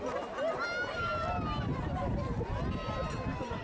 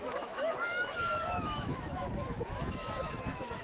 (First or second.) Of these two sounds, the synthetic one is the second